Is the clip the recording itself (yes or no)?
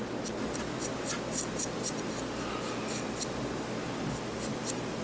yes